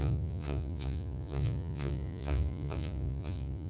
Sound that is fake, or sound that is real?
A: fake